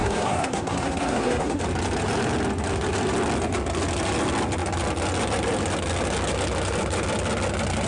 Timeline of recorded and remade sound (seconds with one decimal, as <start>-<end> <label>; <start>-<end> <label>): 0.0-1.6 remade; 1.6-7.9 recorded

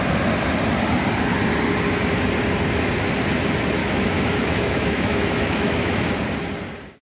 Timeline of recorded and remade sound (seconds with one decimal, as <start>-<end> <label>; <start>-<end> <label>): 0.0-3.8 recorded; 3.8-6.1 remade; 6.1-7.0 recorded

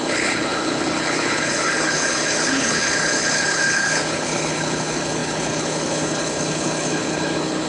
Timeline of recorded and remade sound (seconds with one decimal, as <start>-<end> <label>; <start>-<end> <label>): 0.0-7.7 remade

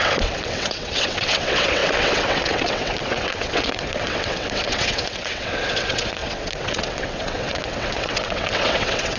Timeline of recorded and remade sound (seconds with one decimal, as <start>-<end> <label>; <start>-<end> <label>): 0.0-9.2 remade

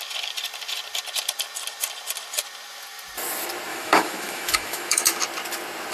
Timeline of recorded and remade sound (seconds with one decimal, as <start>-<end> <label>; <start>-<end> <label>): 0.0-3.7 recorded; 3.7-5.2 remade; 5.2-5.9 recorded